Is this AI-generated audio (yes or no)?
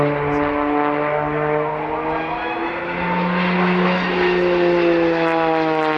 no